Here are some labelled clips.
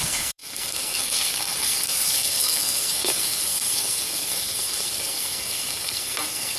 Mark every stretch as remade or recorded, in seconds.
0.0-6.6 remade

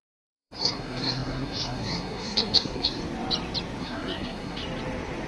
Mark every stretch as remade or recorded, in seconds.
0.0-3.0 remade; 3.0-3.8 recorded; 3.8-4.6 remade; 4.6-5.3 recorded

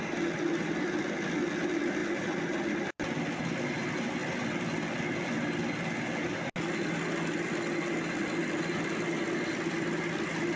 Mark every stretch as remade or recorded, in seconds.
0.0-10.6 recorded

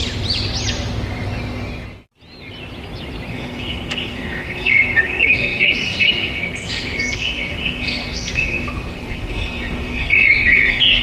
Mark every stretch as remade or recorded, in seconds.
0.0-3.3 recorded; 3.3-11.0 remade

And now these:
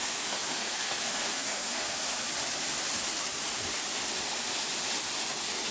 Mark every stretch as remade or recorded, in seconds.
0.0-2.0 remade; 2.0-5.7 recorded